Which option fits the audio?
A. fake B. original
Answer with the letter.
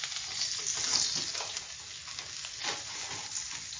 B